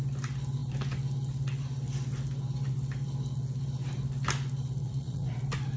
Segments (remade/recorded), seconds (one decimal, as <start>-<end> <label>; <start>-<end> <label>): 0.0-4.8 recorded; 4.8-5.3 remade; 5.3-5.8 recorded